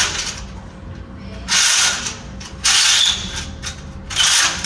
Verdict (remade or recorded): recorded